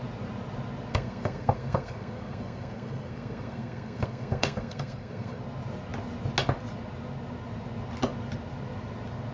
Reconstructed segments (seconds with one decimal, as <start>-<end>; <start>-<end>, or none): 0.9-5.4

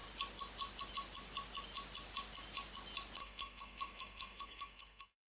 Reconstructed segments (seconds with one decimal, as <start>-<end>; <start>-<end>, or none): 3.2-5.3

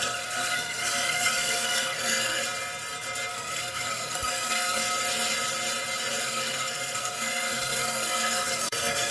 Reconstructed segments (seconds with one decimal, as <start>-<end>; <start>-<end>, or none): 0.0-2.4; 3.3-4.8; 6.2-9.1

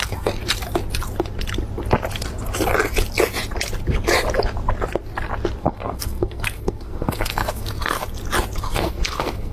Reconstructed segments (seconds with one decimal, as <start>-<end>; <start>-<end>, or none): 0.0-0.4; 5.6-8.0; 8.6-9.5